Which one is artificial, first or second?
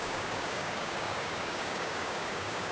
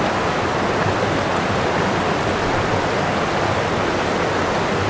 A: first